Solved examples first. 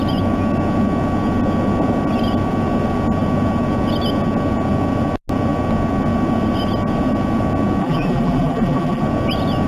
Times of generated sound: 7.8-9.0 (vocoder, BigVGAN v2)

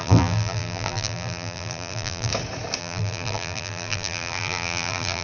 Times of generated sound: 0.0-2.3 (vocoder, BigVGAN v2); 2.8-5.2

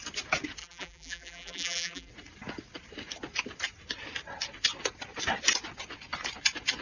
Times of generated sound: 0.6-2.1 (vocoder, BigVGAN v2)

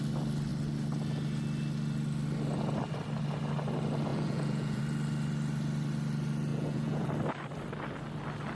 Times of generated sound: 4.1-4.8 (vocoder, Vocos); 6.5-7.1

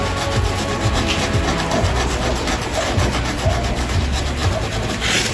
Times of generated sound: none

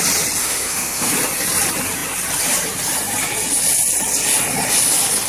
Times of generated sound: 0.4-1.1 (autoencoder, DAC-VAE)